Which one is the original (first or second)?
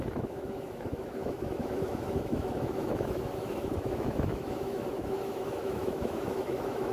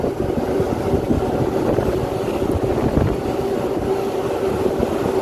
second